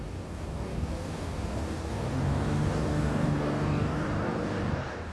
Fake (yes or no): yes